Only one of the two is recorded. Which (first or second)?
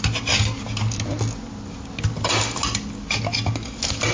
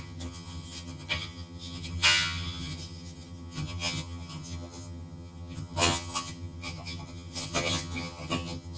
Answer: first